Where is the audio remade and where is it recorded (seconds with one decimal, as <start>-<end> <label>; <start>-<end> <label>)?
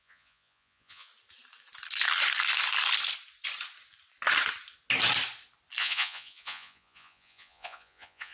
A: 0.0-1.1 remade; 1.1-5.8 recorded; 5.8-8.3 remade